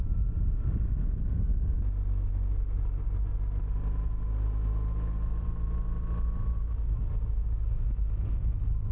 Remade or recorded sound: recorded